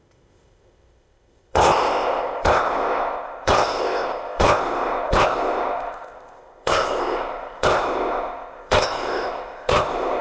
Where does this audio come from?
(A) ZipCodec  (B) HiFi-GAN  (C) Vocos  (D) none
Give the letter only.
A